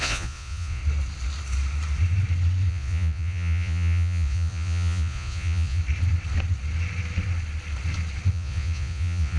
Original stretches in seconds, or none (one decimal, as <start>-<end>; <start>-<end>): 0.8-2.7; 5.8-8.3